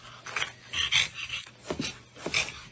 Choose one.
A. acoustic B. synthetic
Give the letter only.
A